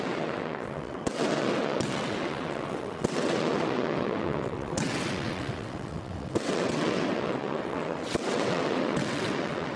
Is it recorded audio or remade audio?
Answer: remade